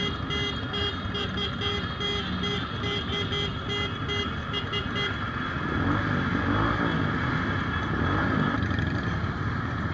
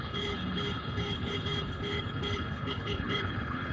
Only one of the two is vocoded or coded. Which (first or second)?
second